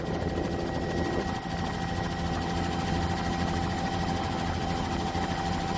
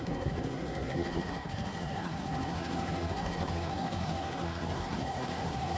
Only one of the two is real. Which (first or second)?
first